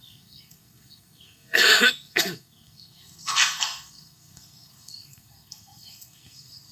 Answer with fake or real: fake